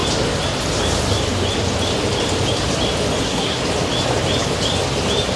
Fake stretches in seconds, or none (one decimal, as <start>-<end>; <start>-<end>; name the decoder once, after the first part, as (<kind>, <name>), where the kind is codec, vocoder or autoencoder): 3.2-3.6 (codec, SNAC)